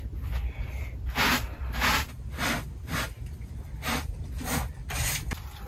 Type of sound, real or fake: real